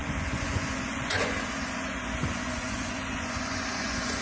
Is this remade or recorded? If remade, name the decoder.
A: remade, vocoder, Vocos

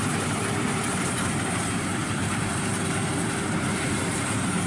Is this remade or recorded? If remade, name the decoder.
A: remade, vocoder, BigVGAN v2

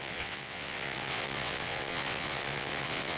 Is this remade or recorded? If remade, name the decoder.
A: remade, vocoder, WaveNeXt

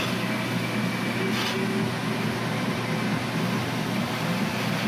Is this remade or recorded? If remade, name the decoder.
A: recorded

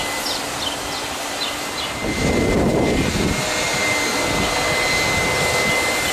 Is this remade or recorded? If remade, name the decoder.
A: recorded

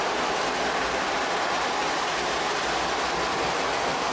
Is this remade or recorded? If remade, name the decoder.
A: recorded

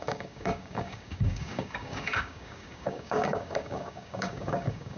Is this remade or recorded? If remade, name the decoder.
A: remade, codec, DAC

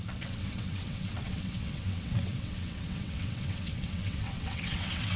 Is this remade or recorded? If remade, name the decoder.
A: remade, vocoder, WaveNeXt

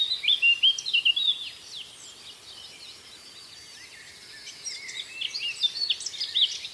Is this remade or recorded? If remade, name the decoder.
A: recorded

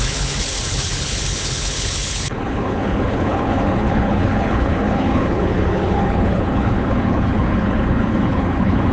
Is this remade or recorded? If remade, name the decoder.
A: remade, codec, HILCodec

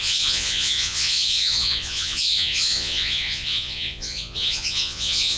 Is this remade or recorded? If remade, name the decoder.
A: remade, vocoder, Vocos